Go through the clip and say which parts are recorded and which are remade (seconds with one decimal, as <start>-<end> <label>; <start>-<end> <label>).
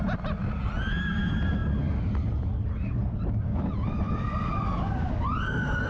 0.0-5.9 recorded